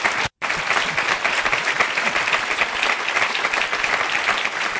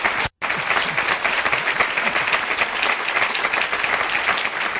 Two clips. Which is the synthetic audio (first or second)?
first